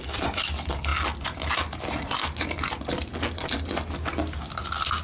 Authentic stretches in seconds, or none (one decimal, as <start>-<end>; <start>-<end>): 0.0-5.0